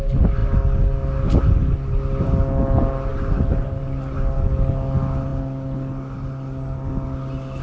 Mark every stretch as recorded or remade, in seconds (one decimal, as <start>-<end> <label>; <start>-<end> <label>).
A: 0.0-7.6 recorded